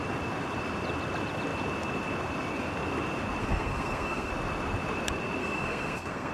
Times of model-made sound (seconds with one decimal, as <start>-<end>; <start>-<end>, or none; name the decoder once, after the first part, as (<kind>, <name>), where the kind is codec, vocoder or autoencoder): 3.4-4.3 (codec, SNAC); 5.4-6.3